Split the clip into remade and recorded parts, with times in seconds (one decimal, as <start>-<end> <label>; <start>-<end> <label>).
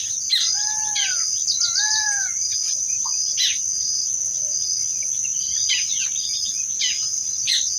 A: 0.0-1.7 recorded; 1.7-3.1 remade; 3.1-7.8 recorded